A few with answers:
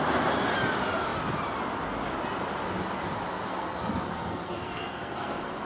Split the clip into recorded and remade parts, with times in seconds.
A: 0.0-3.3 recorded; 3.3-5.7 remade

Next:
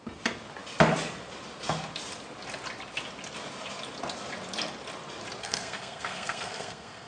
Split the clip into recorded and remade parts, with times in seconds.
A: 0.0-5.4 recorded; 5.4-7.1 remade

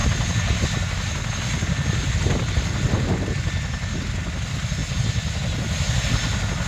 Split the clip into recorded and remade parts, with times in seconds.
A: 0.0-6.7 recorded

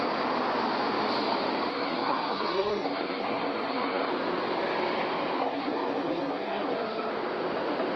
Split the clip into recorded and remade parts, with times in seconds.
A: 0.0-1.7 recorded; 1.7-4.1 remade; 4.1-5.4 recorded; 5.4-7.1 remade; 7.1-8.0 recorded

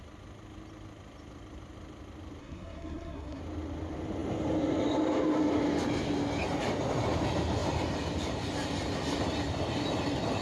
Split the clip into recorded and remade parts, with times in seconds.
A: 0.0-2.4 recorded; 2.4-3.4 remade; 3.4-10.4 recorded

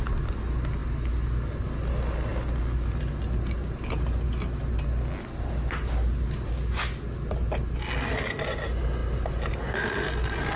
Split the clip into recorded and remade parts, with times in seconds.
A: 0.0-10.6 recorded